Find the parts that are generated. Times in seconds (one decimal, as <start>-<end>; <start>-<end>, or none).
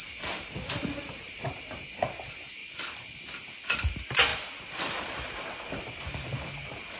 4.3-6.3